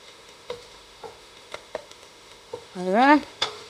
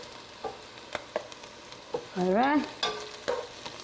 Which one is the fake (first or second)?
first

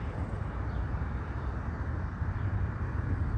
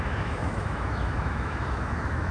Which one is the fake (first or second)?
second